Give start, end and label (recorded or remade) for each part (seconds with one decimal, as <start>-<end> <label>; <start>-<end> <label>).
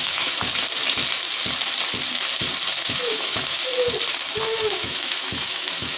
0.0-0.5 remade; 0.5-2.9 recorded; 2.9-3.7 remade; 3.7-4.4 recorded; 4.4-6.0 remade